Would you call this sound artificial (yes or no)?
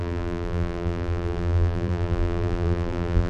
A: yes